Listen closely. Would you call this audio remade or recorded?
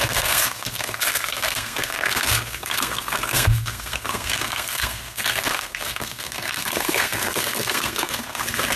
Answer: remade